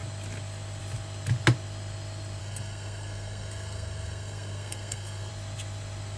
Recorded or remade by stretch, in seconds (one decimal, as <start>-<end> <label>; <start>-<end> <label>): 0.0-2.4 recorded; 2.4-5.3 remade; 5.3-6.2 recorded